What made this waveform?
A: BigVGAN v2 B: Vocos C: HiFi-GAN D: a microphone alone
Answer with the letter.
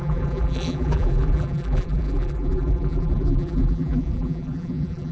A